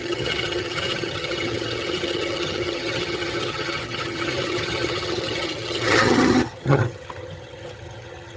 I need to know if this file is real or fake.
fake